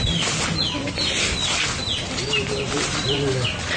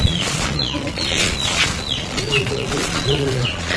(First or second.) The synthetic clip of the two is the second